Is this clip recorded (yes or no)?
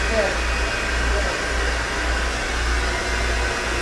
yes